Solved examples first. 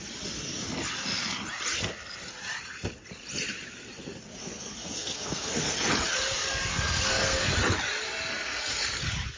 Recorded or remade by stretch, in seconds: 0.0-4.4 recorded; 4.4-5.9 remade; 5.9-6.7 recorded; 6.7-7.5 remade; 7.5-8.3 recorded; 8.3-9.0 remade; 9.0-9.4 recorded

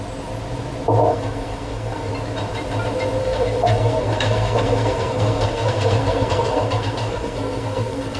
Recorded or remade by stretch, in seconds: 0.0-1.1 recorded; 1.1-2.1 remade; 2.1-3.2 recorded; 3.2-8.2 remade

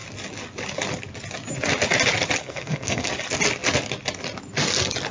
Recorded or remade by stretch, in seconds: 0.0-2.4 recorded; 2.4-3.1 remade; 3.1-5.1 recorded

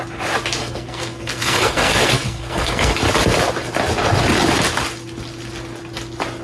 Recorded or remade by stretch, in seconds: 0.0-0.6 recorded; 0.6-2.9 remade; 2.9-6.4 recorded